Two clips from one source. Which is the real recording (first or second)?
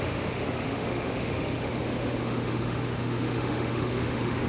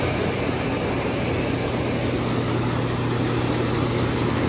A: second